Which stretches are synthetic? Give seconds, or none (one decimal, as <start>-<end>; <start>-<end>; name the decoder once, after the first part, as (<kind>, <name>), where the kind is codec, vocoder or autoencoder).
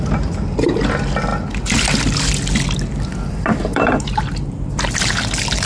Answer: 3.7-4.7 (vocoder, BigVGAN v2)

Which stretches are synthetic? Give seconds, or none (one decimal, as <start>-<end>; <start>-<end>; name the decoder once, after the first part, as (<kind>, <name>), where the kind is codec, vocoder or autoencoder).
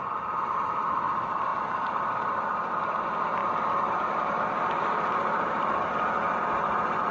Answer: none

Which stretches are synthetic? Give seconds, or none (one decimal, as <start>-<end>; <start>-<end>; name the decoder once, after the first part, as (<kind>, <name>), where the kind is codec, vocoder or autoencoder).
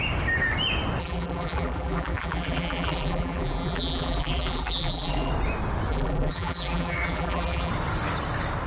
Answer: 1.0-5.3 (vocoder, BigVGAN v2); 5.9-7.7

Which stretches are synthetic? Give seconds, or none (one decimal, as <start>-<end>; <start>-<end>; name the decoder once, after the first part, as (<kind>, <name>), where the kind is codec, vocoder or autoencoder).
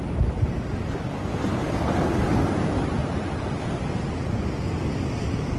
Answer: 3.0-3.8 (vocoder, BigVGAN v2)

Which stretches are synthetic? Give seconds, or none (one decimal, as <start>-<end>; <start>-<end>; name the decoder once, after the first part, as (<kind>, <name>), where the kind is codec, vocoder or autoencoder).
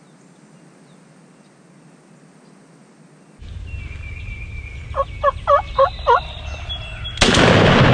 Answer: none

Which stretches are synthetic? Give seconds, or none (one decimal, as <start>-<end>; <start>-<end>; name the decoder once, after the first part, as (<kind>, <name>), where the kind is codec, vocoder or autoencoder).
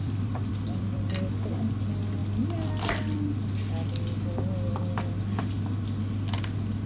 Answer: 0.0-1.1 (vocoder, BigVGAN v2)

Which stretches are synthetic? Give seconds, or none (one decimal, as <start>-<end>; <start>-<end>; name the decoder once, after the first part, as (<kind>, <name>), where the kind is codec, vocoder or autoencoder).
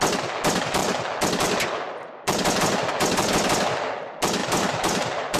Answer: 4.4-5.4 (vocoder, BigVGAN v2)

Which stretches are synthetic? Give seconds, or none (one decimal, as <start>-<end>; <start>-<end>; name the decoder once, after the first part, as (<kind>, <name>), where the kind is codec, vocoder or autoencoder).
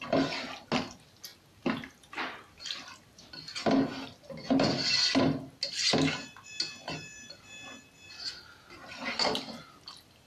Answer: none